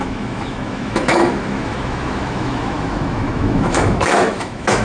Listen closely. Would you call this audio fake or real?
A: fake